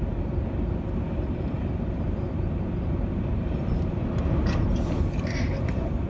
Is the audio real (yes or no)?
yes